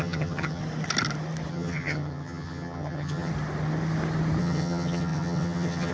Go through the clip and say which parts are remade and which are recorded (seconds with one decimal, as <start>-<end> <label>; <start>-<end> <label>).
0.0-0.6 remade; 0.6-1.5 recorded; 1.5-3.3 remade; 3.3-4.4 recorded; 4.4-5.9 remade